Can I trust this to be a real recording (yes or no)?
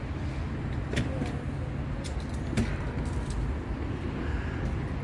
yes